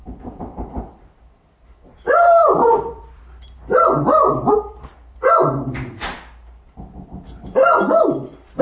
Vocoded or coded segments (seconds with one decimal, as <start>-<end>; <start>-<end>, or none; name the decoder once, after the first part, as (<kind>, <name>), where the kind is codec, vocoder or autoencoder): 2.4-3.2 (vocoder, BigVGAN v2)